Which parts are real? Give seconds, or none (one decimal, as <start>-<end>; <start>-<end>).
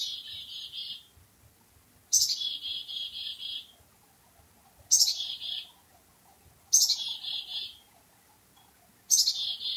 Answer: 0.0-9.8